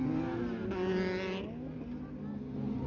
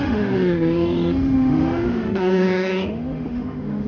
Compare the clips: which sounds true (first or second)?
first